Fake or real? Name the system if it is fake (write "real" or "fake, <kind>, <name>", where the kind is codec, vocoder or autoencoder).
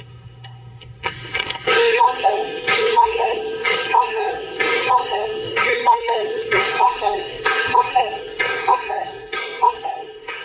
fake, codec, SNAC